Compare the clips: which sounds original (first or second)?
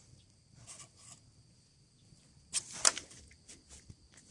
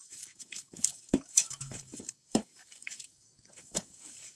first